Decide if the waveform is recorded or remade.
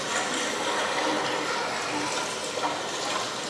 recorded